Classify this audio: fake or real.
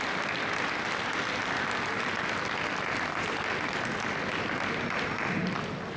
real